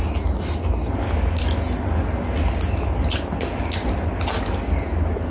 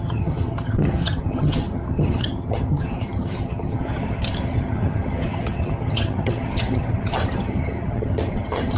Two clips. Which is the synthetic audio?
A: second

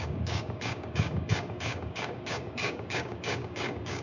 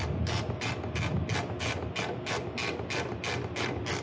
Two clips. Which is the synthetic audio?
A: first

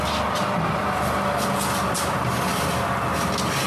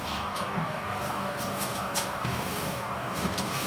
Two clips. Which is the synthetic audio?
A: second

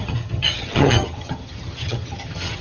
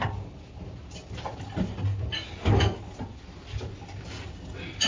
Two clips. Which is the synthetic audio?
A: first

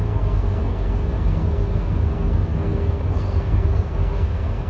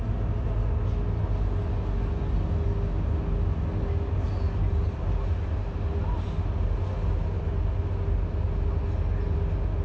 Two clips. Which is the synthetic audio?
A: first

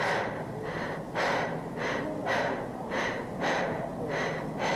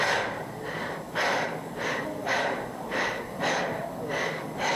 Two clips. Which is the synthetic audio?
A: second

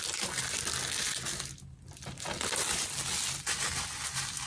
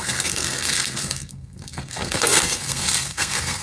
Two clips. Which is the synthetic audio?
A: second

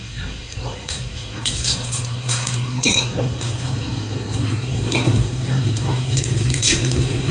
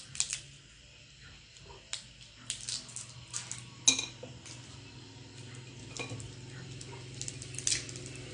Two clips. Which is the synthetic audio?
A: first